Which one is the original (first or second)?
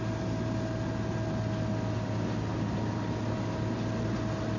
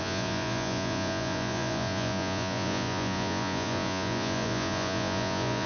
first